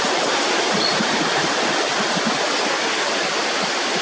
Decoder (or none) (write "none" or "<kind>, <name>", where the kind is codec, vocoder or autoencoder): none